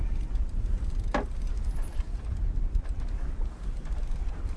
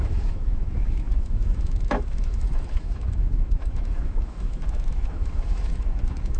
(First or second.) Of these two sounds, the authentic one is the first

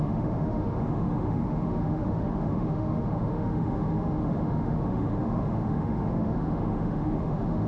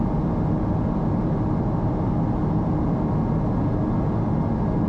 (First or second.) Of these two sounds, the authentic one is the second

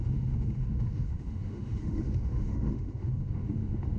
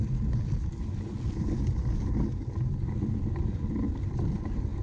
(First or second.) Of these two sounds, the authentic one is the second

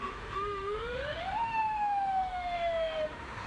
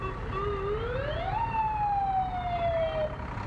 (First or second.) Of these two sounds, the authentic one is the second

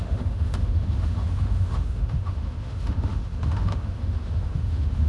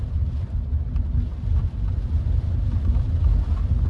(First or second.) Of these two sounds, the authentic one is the second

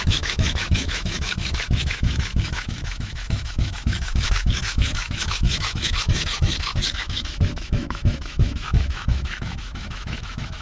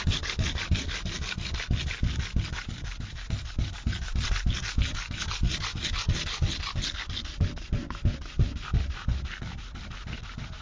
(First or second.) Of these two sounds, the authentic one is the second